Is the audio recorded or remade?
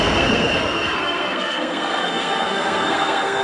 remade